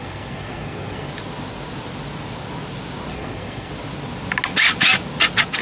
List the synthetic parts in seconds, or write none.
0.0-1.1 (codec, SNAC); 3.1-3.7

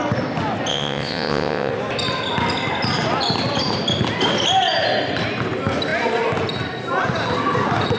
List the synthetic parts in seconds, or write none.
0.7-1.7 (vocoder, WaveNeXt)

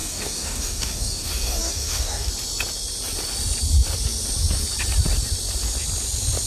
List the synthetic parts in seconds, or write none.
0.0-2.3 (codec, DAC)

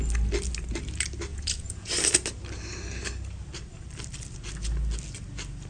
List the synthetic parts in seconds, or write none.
1.3-1.9 (vocoder, Vocos)

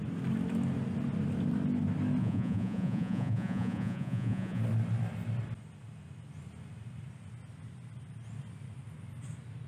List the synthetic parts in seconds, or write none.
2.2-4.6 (vocoder, Vocos)

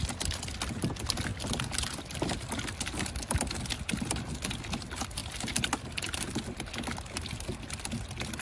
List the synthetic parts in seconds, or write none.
none

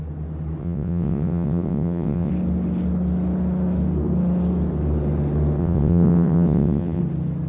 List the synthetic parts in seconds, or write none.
0.6-2.3 (vocoder, WaveNeXt); 5.6-7.0

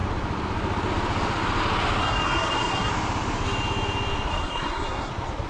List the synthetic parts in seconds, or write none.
2.0-2.9 (codec, SNAC); 4.3-5.1